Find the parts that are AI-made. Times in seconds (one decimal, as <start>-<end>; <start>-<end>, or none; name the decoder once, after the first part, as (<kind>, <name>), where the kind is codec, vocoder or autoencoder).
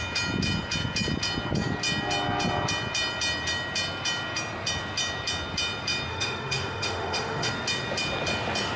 6.1-7.5 (autoencoder, DAC-VAE)